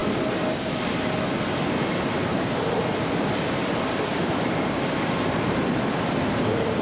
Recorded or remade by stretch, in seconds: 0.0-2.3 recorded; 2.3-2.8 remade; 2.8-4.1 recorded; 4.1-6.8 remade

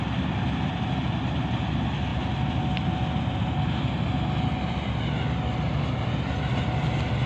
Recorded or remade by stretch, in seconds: 0.0-7.3 recorded